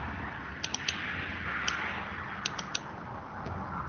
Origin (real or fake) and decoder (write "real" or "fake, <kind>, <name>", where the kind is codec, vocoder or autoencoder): real